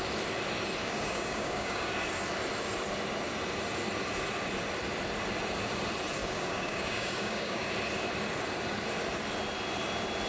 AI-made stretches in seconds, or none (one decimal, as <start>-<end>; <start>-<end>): 0.8-1.9; 6.2-7.7